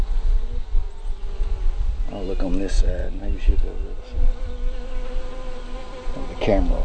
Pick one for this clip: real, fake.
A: real